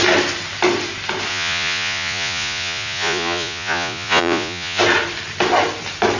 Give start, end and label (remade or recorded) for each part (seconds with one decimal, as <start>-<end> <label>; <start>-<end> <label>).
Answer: 0.0-1.3 recorded; 1.3-4.8 remade; 4.8-6.2 recorded